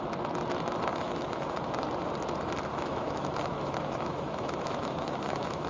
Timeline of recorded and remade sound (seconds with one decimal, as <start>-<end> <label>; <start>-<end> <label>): 0.0-0.9 recorded; 0.9-1.6 remade; 1.6-2.7 recorded; 2.7-5.7 remade